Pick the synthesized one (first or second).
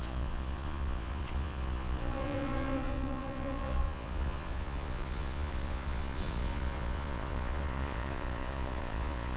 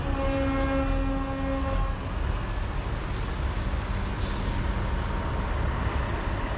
first